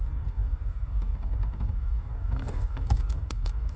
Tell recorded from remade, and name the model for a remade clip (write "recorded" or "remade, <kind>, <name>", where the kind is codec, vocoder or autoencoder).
remade, codec, DAC